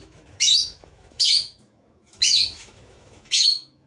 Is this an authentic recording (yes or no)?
no